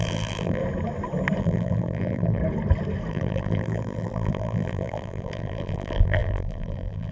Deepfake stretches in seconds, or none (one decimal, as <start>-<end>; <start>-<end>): 0.0-0.6; 1.4-2.4; 3.1-7.1